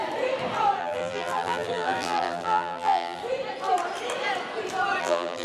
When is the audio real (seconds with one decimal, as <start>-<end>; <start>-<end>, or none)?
0.0-0.8; 3.2-5.0

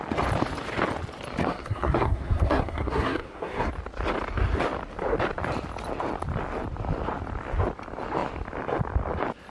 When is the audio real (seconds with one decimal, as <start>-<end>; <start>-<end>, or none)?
0.0-1.4; 3.7-9.5

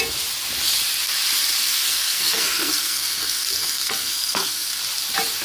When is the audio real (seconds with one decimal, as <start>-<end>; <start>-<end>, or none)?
0.0-1.6; 4.8-5.4

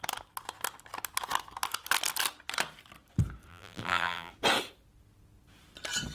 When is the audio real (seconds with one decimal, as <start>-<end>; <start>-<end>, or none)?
0.0-3.5; 4.3-6.1